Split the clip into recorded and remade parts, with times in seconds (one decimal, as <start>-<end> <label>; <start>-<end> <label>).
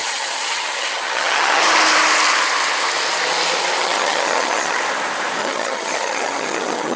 0.0-1.6 remade; 1.6-3.8 recorded; 3.8-4.8 remade; 4.8-5.4 recorded; 5.4-7.0 remade